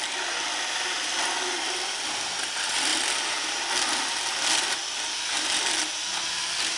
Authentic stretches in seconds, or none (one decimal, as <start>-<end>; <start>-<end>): 2.9-6.3